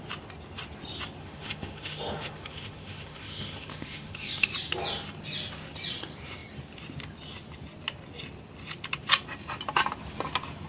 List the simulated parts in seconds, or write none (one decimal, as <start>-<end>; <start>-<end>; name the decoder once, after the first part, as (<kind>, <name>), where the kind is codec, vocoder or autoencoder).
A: 1.2-4.5 (autoencoder, DAC-VAE)